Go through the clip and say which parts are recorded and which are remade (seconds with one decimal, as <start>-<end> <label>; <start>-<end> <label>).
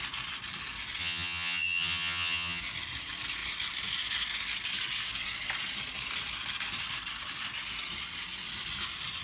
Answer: 0.0-1.0 recorded; 1.0-2.6 remade; 2.6-9.2 recorded